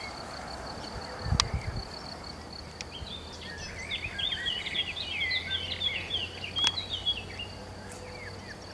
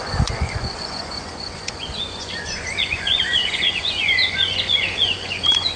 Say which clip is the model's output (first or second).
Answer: second